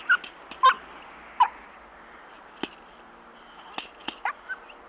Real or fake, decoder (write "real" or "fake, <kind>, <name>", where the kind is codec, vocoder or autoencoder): real